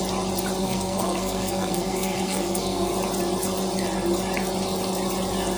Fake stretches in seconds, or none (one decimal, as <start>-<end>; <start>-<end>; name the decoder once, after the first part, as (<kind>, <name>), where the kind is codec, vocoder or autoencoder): 0.6-2.9 (codec, SNAC)